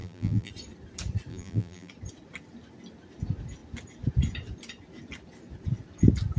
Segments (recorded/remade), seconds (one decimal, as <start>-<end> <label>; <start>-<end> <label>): 0.0-0.5 remade; 0.5-1.3 recorded; 1.3-1.9 remade; 1.9-6.4 recorded

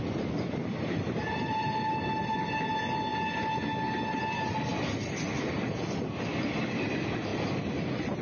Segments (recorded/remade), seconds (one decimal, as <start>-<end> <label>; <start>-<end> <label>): 0.0-8.2 recorded